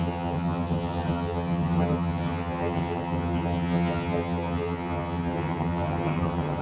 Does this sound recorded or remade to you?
remade